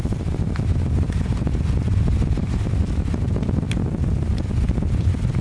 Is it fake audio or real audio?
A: real